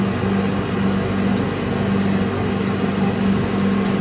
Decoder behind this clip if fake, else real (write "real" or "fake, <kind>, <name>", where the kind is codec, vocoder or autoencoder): real